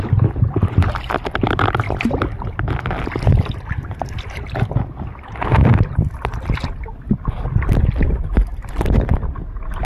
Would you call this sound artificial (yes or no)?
no